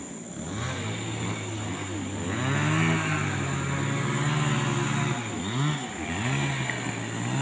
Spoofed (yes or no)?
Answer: no